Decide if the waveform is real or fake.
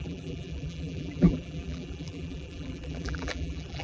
fake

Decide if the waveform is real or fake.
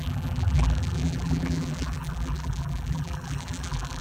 fake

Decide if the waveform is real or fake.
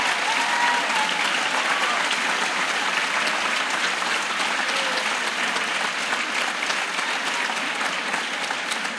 real